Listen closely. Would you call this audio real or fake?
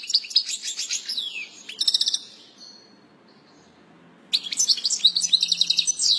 real